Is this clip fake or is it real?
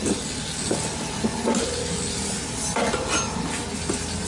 real